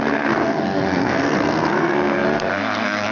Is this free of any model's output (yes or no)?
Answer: no